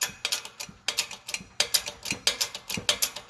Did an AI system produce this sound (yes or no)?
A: no